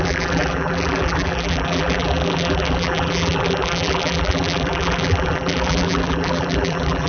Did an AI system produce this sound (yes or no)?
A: yes